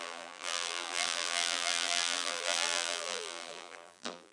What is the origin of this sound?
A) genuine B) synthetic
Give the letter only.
B